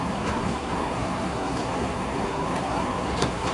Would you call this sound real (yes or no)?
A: no